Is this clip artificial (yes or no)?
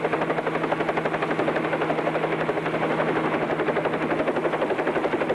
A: no